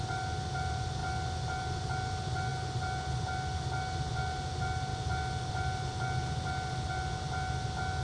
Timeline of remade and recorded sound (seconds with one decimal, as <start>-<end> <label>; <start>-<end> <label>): 0.0-8.0 recorded